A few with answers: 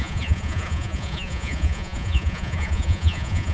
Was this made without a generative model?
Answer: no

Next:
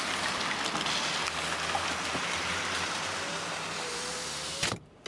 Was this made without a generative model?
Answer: yes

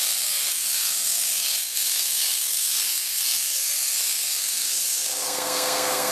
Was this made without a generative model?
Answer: no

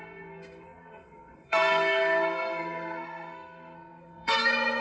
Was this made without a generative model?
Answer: no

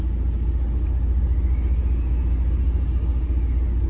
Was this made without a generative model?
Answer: yes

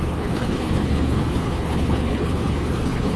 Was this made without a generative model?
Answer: no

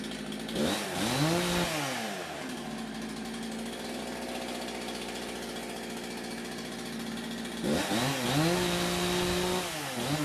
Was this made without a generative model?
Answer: yes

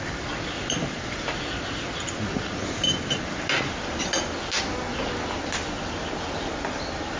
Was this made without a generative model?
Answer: yes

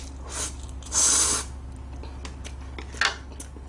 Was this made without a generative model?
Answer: yes